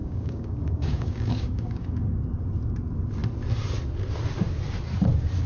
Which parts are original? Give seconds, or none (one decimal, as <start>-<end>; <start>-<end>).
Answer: 2.3-5.5